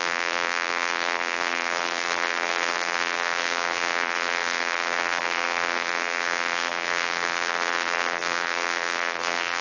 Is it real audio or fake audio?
fake